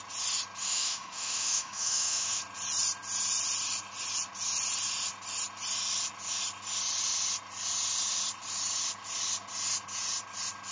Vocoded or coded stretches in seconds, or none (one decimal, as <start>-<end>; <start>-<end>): 0.6-2.4

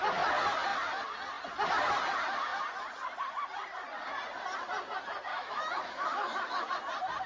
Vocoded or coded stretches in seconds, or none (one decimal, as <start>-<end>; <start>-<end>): 5.3-6.7

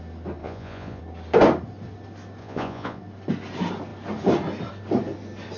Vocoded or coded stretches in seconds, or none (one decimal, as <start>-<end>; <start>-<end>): 0.4-1.0; 2.4-3.0

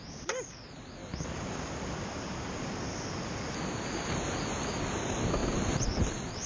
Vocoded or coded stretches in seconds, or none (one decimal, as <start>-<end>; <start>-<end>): none

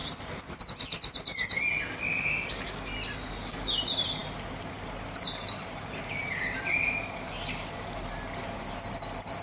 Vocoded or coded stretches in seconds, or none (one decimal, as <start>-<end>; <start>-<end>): 4.2-8.0

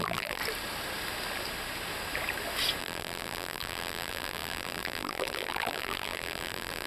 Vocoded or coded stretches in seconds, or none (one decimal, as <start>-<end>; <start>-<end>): 0.0-0.4; 2.8-6.9